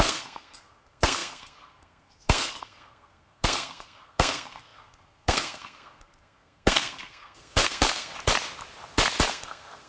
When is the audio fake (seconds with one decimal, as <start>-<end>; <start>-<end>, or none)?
0.0-8.1; 9.3-9.9